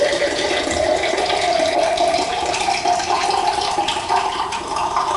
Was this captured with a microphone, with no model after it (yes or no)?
no